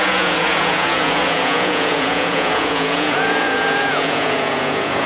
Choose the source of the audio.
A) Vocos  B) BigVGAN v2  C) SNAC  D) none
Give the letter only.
A